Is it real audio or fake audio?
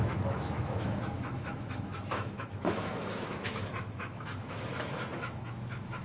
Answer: fake